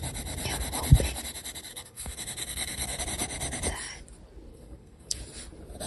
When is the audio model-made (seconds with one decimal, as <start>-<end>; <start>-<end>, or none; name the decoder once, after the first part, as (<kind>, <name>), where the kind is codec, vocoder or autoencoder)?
1.7-3.0 (codec, SNAC); 4.5-5.2